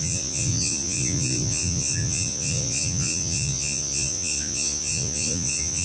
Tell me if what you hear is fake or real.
fake